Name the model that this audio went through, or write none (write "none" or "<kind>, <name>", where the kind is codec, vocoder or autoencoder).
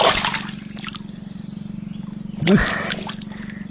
none